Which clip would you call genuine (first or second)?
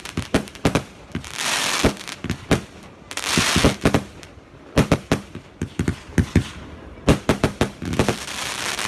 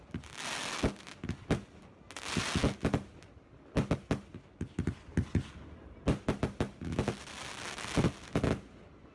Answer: second